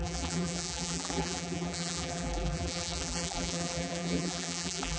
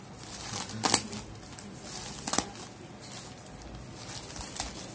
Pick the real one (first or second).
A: second